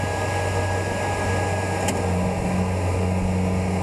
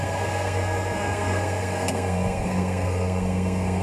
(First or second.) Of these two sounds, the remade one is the second